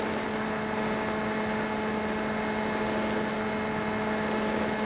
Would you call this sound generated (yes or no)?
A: no